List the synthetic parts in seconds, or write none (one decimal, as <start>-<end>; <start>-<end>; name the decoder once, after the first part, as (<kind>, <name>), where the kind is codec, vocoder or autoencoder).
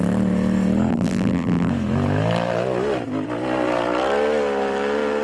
0.9-1.7 (vocoder, BigVGAN v2)